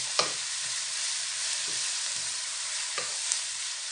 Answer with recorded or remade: remade